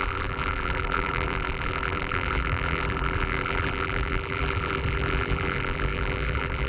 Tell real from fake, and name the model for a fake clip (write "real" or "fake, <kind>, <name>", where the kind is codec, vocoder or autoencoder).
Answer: fake, vocoder, BigVGAN v2